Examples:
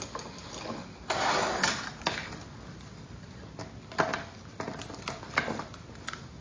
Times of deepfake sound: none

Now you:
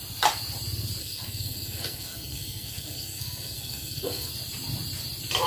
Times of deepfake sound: 1.0-4.3 (codec, SNAC)

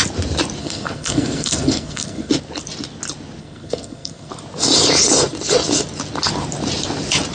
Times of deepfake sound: 0.6-2.3 (codec, SNAC); 3.4-4.3

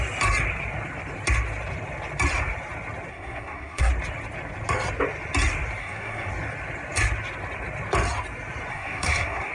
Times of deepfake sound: 3.1-3.9 (codec, SNAC); 5.8-6.3; 8.7-9.5

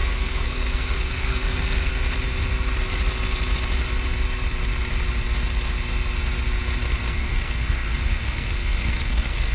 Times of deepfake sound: 0.0-1.9 (codec, SNAC); 7.0-9.5

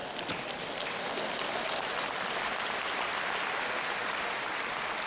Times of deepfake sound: none

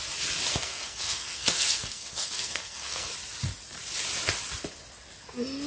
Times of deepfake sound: 0.5-3.1 (codec, SNAC)